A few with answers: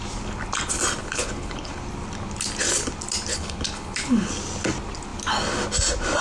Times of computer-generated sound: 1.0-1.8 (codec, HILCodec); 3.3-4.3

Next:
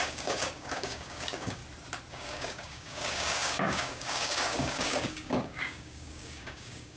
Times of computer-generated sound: 0.0-1.6 (codec, DAC); 2.1-7.0

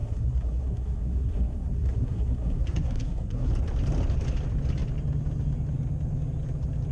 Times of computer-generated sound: 0.0-3.5 (codec, SNAC)

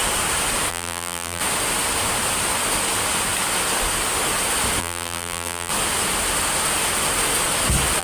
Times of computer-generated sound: 0.7-1.4 (vocoder, BigVGAN v2); 4.8-5.7

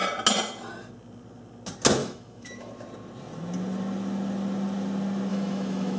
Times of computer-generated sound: 2.0-2.7 (autoencoder, DAC-VAE); 5.3-6.0

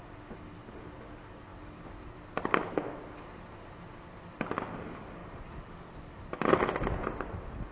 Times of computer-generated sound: none

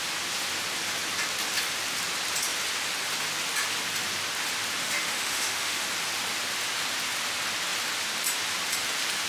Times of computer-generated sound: 4.8-5.9 (autoencoder, DAC-VAE)

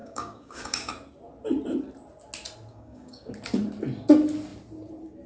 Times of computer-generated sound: 0.0-0.9 (codec, DAC); 2.7-3.3